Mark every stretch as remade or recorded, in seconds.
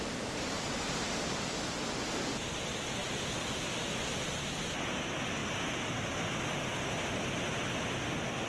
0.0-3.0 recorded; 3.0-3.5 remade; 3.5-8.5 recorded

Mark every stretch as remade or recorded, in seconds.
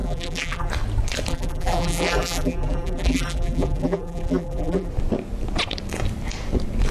0.0-0.7 remade; 0.7-1.3 recorded; 1.3-4.9 remade; 4.9-6.9 recorded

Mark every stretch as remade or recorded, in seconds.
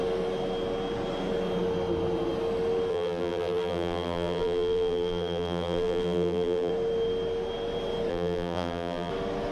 0.0-2.9 recorded; 2.9-6.7 remade; 6.7-8.1 recorded; 8.1-9.1 remade; 9.1-9.5 recorded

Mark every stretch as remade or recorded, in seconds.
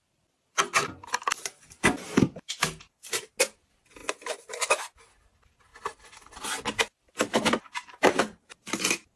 0.0-4.0 recorded; 4.0-4.5 remade; 4.5-7.6 recorded; 7.6-9.2 remade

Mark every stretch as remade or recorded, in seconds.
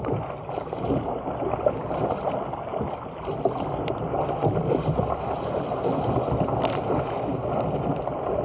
0.0-8.4 recorded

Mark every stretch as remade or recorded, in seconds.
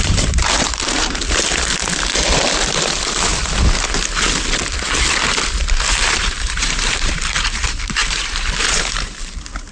0.0-1.2 remade; 1.2-6.2 recorded; 6.2-9.7 remade